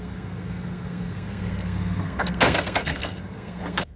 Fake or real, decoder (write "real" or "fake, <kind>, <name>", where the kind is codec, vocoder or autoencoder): fake, codec, SNAC